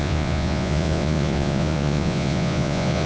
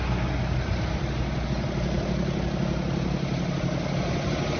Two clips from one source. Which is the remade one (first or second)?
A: first